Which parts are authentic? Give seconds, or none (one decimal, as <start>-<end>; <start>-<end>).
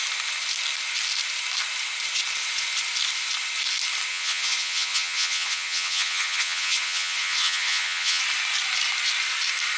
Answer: 0.0-4.1; 8.2-9.8